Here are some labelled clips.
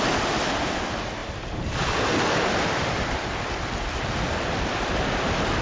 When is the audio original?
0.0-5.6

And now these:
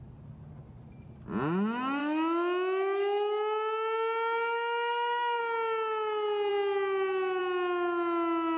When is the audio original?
0.0-2.0; 5.4-8.6